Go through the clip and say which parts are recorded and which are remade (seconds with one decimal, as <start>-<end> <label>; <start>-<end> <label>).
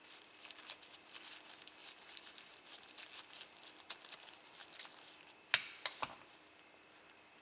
0.0-1.8 recorded; 1.8-2.5 remade; 2.5-7.4 recorded